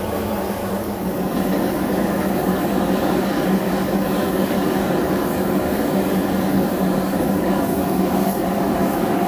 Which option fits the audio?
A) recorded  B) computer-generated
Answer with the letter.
B